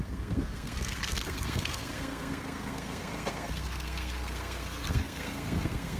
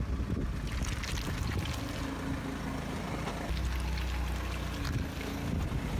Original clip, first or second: second